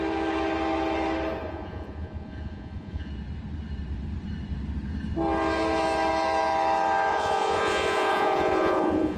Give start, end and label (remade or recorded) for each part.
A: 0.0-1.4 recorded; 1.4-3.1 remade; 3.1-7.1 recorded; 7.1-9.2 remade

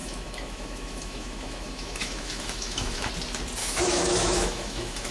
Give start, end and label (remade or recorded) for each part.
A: 0.0-3.1 remade; 3.1-3.6 recorded; 3.6-5.1 remade